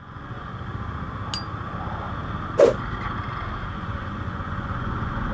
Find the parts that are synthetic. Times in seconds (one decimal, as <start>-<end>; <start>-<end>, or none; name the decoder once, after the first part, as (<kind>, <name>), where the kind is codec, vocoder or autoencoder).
0.0-0.5 (vocoder, Vocos); 3.7-5.3